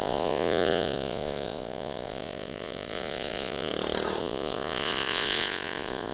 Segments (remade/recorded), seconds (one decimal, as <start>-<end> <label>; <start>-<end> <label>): 0.0-3.7 remade; 3.7-4.2 recorded; 4.2-6.1 remade